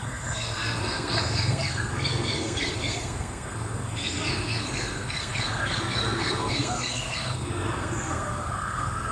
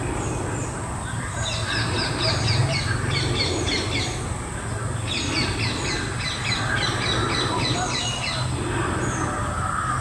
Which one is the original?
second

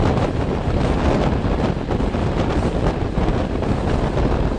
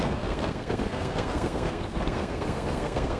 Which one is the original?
first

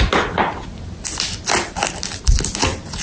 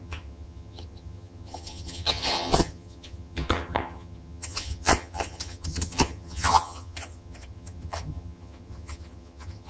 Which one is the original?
first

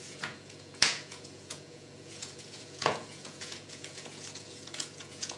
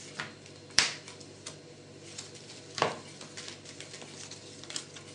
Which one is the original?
second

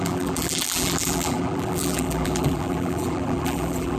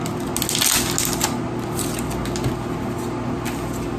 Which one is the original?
second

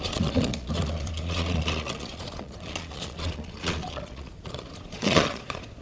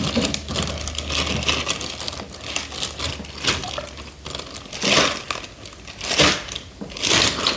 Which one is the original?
second